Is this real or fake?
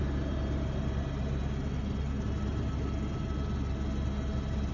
real